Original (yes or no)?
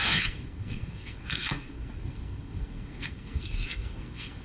no